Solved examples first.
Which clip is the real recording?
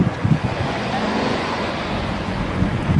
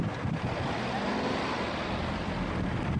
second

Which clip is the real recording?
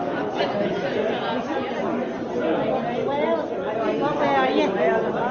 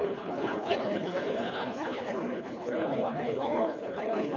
first